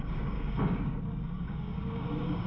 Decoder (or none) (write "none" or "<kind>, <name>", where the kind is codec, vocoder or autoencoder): codec, DAC